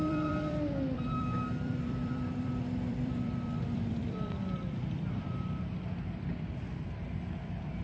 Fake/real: fake